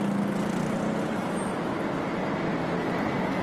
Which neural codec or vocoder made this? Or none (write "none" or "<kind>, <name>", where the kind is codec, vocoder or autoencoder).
none